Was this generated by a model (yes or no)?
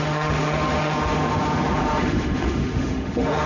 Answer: yes